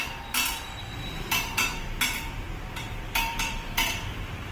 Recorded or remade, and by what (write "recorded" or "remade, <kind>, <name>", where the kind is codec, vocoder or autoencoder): remade, vocoder, BigVGAN v2